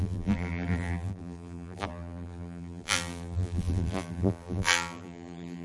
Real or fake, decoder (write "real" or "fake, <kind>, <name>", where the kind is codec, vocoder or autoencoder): fake, vocoder, BigVGAN v2